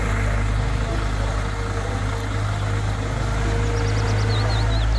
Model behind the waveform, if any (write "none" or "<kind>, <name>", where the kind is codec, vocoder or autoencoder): none